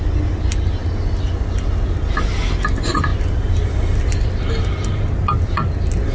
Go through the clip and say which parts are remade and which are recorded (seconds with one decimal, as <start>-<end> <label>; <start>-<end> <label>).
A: 0.0-6.1 recorded